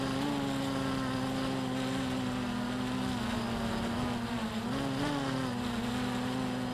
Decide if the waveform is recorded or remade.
recorded